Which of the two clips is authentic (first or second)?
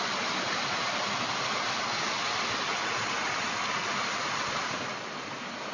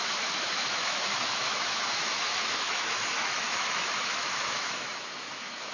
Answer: first